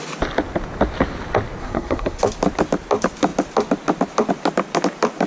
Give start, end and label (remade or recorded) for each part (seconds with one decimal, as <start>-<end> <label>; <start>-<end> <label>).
0.0-1.6 recorded; 1.6-2.2 remade; 2.2-5.3 recorded